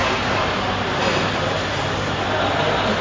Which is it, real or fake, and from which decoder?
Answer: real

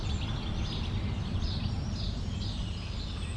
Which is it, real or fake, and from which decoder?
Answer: real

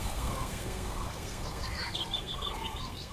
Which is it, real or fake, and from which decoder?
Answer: fake, codec, SNAC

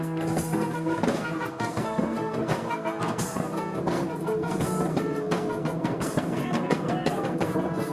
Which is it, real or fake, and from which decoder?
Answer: fake, codec, SNAC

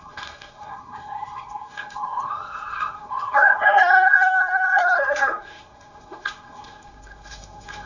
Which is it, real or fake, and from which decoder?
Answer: fake, codec, SNAC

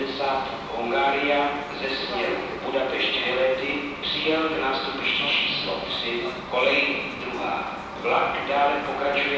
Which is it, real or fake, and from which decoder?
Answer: real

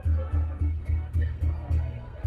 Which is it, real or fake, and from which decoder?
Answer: fake, codec, SNAC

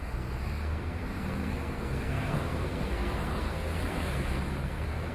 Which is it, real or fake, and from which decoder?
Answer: fake, codec, SNAC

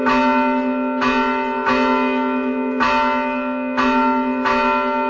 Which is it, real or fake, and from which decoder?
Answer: real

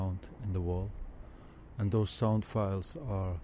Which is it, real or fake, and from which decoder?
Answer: real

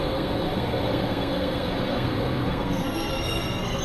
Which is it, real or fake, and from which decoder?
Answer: fake, codec, SNAC